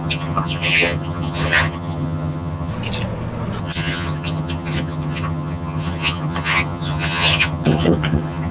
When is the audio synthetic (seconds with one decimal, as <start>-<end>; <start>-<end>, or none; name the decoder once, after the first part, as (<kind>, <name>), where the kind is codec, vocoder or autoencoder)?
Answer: 0.0-2.7 (vocoder, HiFi-GAN); 3.6-8.5